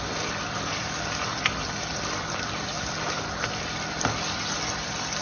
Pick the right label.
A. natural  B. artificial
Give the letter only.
A